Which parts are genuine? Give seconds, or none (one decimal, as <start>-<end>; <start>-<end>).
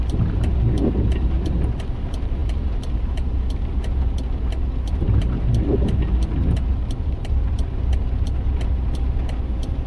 none